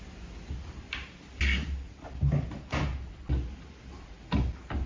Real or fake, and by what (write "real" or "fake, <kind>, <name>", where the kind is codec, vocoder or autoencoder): real